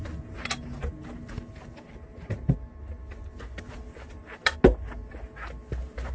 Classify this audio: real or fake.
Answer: real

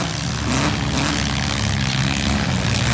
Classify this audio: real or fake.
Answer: real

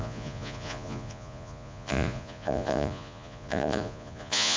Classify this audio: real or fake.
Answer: fake